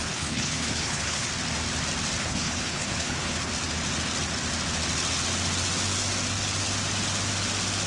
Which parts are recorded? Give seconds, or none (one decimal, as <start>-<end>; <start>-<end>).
1.3-2.2; 3.5-7.9

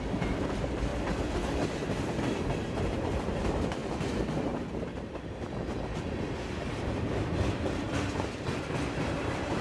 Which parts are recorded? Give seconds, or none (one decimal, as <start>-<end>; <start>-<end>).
0.9-3.2; 3.8-8.9

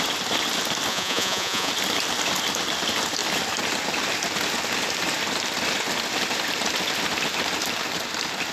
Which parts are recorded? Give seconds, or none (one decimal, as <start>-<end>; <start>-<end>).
0.0-0.9; 1.7-8.5

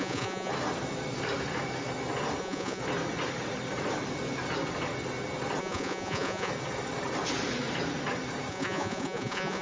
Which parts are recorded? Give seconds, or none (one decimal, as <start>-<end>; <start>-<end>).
0.5-2.4; 2.8-5.6; 6.5-8.5

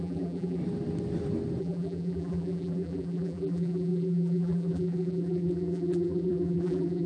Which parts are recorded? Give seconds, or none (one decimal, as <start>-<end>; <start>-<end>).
0.6-1.6

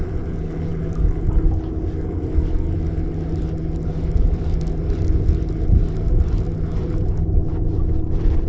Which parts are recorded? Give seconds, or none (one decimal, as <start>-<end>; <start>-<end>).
0.0-8.5

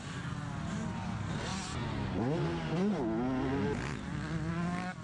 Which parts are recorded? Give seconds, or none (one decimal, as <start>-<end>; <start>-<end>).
0.0-5.0

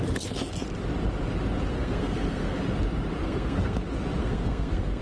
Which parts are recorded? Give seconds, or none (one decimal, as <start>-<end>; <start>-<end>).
0.0-1.7; 2.6-3.2; 3.8-4.2